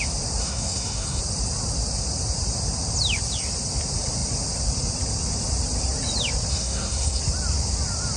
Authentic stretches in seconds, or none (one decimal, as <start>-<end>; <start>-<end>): 0.0-0.4; 1.2-6.5; 7.2-8.2